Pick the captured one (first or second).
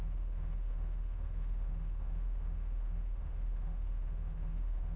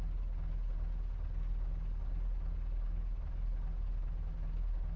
second